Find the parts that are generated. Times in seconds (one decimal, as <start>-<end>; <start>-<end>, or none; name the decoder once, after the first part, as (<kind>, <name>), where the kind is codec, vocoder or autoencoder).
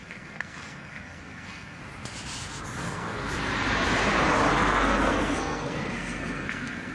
0.0-1.8 (codec, SNAC); 2.8-3.3; 4.5-6.9